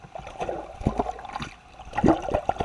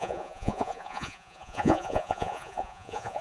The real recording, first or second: first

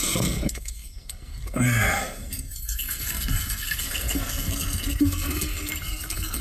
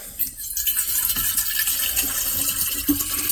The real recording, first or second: second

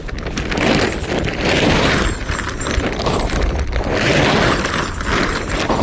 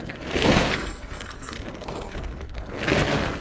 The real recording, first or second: first